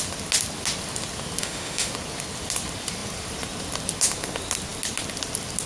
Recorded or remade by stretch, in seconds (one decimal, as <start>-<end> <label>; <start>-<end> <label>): 0.0-1.4 recorded; 1.4-1.9 remade; 1.9-5.7 recorded

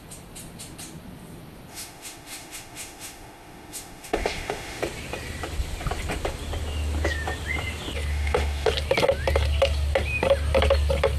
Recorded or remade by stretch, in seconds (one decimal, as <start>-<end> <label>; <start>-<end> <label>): 0.0-1.7 recorded; 1.7-4.8 remade; 4.8-8.1 recorded; 8.1-8.7 remade; 8.7-11.2 recorded

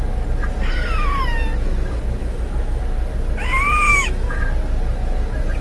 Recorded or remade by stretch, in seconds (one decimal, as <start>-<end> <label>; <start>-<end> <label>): 0.0-2.2 recorded; 2.2-2.8 remade; 2.8-3.9 recorded; 3.9-4.4 remade; 4.4-5.6 recorded

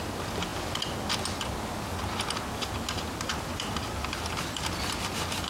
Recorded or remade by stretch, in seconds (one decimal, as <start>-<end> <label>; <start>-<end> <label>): 0.0-5.5 recorded

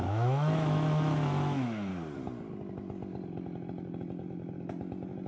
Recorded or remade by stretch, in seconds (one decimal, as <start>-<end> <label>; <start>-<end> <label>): 0.0-1.9 remade; 1.9-5.3 recorded

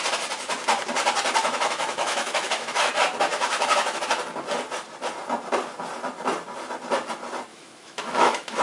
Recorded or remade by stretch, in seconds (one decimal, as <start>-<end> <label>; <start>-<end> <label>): 0.0-1.4 recorded; 1.4-2.9 remade; 2.9-3.3 recorded; 3.3-4.0 remade; 4.0-7.5 recorded; 7.5-8.6 remade

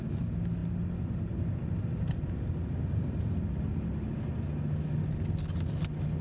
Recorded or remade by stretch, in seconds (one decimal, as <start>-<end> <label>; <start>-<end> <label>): 0.0-6.2 recorded

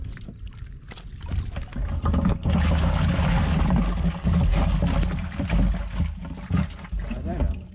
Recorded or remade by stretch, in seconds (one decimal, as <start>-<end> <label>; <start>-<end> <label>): 0.0-7.7 recorded